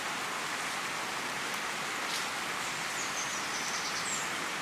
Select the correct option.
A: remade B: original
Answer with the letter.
B